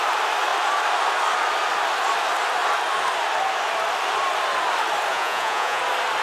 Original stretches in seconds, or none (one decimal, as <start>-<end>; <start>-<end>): 0.0-5.1; 5.8-6.2

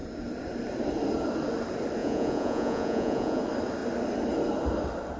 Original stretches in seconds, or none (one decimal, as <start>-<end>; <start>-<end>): 0.0-2.0; 3.4-5.2

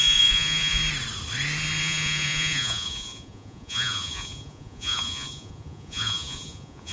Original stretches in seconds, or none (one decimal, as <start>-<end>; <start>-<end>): 0.8-1.8